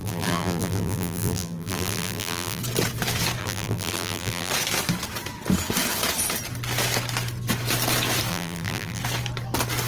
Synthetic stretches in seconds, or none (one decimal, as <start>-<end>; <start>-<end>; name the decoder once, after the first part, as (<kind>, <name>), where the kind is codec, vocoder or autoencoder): 0.0-2.6 (vocoder, BigVGAN v2); 3.4-4.5; 8.3-9.0